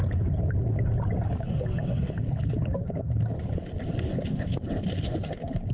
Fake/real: real